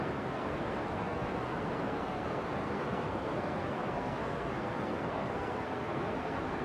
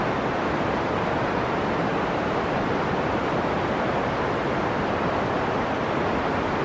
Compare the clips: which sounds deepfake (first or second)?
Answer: first